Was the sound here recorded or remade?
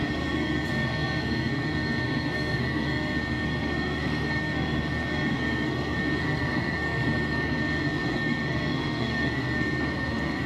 remade